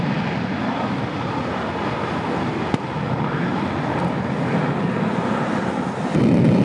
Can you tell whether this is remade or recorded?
recorded